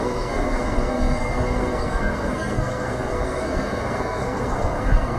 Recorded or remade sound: remade